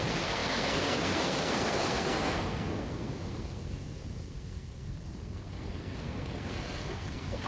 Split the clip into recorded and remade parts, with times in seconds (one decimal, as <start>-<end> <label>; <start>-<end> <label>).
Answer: 0.0-7.5 remade